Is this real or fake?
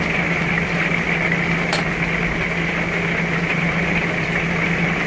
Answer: real